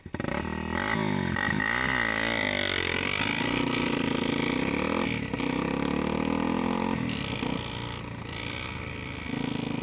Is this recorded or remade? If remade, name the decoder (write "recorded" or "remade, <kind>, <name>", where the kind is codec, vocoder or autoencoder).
recorded